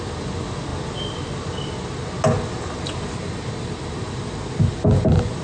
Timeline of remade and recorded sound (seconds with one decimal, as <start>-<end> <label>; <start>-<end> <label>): 0.0-5.4 recorded